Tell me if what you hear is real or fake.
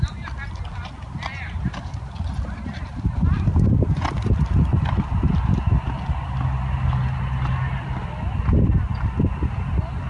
real